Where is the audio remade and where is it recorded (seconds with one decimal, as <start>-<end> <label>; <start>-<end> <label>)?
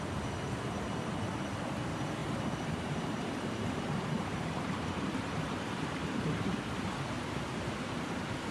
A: 0.0-2.2 recorded; 2.2-6.6 remade; 6.6-8.5 recorded